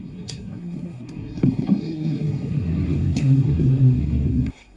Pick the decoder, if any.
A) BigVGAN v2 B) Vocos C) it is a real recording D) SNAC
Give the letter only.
D